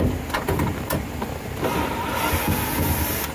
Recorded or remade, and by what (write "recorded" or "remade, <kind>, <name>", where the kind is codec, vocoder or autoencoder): recorded